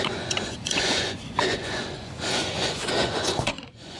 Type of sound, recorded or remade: remade